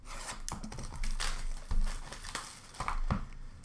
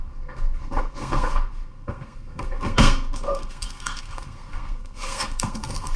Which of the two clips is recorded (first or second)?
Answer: first